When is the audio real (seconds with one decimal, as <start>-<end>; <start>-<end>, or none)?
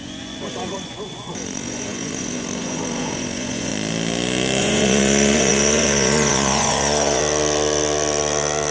3.7-4.6; 7.2-8.7